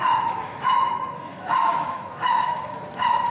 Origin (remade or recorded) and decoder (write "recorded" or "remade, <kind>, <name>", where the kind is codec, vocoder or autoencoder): remade, autoencoder, DAC-VAE